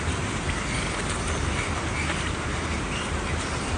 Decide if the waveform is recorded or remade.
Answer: recorded